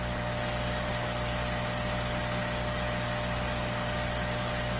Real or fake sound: real